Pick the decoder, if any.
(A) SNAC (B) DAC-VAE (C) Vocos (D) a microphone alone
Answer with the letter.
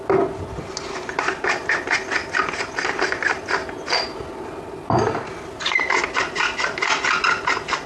D